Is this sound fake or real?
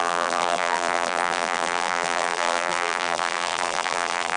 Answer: fake